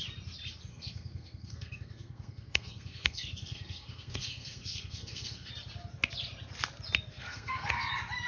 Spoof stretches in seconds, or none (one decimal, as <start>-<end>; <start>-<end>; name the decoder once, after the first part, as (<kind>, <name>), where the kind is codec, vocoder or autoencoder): 0.7-5.5 (codec, SNAC); 7.1-7.9